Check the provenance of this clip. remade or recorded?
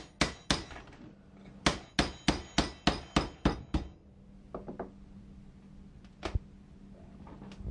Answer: recorded